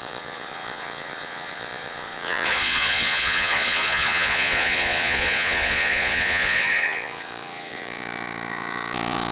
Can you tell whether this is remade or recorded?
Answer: remade